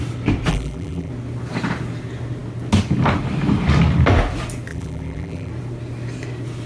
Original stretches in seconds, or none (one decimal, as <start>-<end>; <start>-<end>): 0.0-0.5; 1.1-4.7; 5.5-6.7